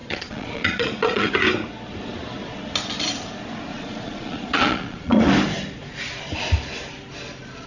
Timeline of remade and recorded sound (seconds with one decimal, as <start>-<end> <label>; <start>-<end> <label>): 0.0-1.3 remade; 1.3-3.7 recorded; 3.7-5.3 remade; 5.3-7.7 recorded